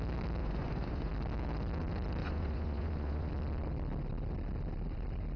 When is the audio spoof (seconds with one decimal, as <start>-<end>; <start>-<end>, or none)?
0.4-1.1; 2.2-3.3